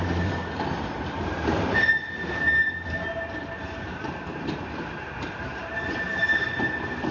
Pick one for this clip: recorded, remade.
remade